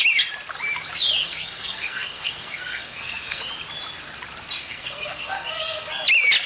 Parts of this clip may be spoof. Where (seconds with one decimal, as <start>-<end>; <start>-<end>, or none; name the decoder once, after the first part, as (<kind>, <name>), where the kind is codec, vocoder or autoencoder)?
1.2-3.4 (codec, SNAC); 4.6-5.9